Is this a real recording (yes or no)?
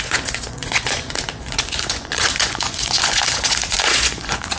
no